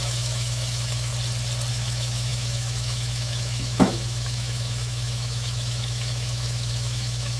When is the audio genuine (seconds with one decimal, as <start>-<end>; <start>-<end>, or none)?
1.1-1.7